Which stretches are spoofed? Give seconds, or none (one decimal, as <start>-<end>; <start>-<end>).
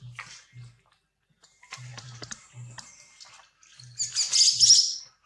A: 1.9-2.9